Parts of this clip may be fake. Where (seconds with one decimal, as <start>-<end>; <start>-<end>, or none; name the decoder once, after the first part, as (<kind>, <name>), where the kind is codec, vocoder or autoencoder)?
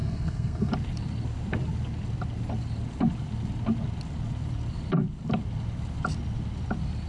0.0-0.7 (codec, SNAC)